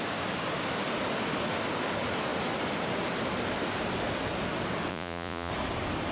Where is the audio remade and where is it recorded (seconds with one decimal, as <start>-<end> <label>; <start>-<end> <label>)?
0.0-4.9 recorded; 4.9-5.5 remade; 5.5-6.1 recorded